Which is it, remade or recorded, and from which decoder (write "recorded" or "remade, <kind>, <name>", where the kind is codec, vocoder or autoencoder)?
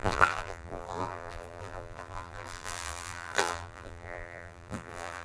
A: remade, vocoder, BigVGAN v2